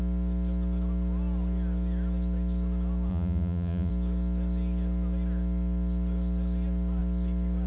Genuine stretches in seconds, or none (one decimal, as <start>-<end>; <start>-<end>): 0.0-3.1; 3.9-7.7